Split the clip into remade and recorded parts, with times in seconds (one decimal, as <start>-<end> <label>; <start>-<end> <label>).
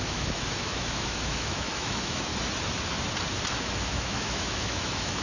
0.0-2.3 remade; 2.3-3.6 recorded; 3.6-5.2 remade